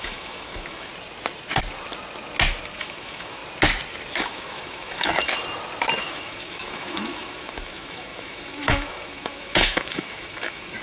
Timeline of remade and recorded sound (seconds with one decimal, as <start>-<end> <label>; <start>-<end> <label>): 0.0-0.9 remade; 0.9-2.8 recorded; 2.8-3.4 remade; 3.4-4.2 recorded; 4.2-5.3 remade; 5.3-6.0 recorded; 6.0-10.8 remade